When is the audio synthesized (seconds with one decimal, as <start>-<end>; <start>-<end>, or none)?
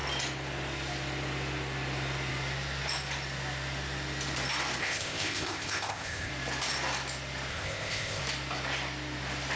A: 4.8-6.3; 7.5-8.2